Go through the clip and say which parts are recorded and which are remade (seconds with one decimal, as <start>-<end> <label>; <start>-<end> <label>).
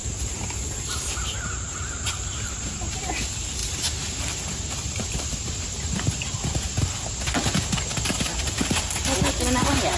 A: 0.0-3.0 remade; 3.0-3.6 recorded; 3.6-5.6 remade; 5.6-10.0 recorded